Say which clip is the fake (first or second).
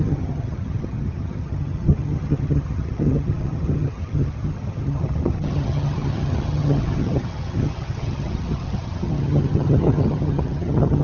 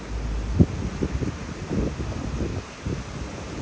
first